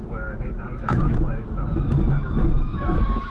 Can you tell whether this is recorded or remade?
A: remade